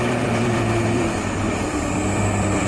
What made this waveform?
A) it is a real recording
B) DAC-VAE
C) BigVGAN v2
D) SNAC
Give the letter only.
C